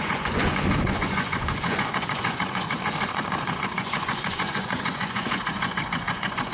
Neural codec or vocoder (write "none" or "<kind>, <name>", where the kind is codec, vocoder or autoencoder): vocoder, Vocos